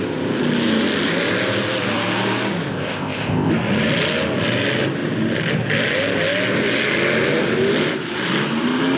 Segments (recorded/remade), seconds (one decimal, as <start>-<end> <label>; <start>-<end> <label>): 0.0-2.7 recorded; 2.7-3.5 remade; 3.5-9.0 recorded